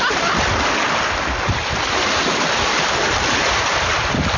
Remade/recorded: recorded